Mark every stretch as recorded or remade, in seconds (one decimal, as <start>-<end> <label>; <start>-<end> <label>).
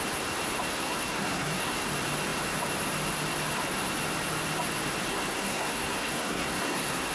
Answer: 0.0-0.7 recorded; 0.7-1.9 remade; 1.9-5.1 recorded; 5.1-7.1 remade